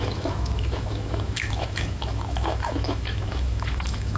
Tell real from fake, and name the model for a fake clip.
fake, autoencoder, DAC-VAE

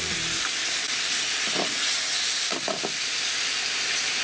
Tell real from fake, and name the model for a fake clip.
real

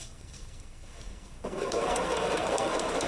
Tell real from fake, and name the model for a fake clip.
fake, codec, SNAC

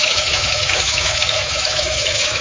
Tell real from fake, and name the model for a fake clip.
fake, autoencoder, DAC-VAE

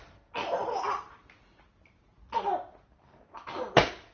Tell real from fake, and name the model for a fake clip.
real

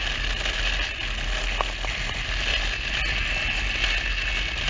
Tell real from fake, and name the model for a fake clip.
real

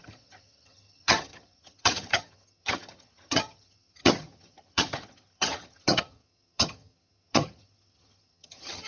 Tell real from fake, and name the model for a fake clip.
fake, vocoder, HiFi-GAN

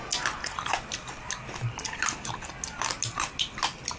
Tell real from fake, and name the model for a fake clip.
real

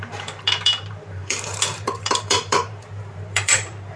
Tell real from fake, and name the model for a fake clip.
fake, vocoder, BigVGAN v2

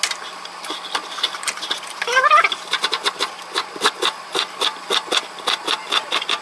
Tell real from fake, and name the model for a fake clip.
real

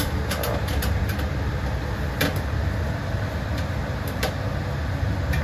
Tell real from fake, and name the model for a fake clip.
real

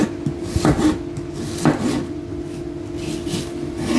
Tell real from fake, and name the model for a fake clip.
real